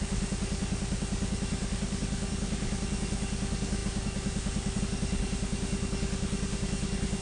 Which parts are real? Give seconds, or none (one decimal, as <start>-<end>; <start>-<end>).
none